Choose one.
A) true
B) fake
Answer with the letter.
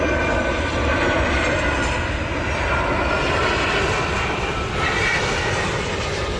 A